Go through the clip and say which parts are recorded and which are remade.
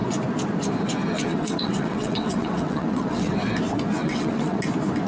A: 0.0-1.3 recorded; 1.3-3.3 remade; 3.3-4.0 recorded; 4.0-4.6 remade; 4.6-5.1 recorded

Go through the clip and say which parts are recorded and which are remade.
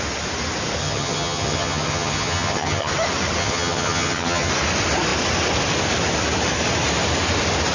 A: 0.0-0.8 recorded; 0.8-2.9 remade; 2.9-3.4 recorded; 3.4-4.5 remade; 4.5-7.7 recorded